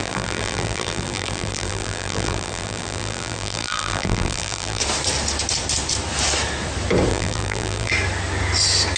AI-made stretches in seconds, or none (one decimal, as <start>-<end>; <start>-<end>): 0.0-4.8; 7.1-7.9